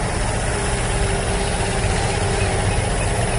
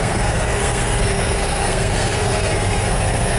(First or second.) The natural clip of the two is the first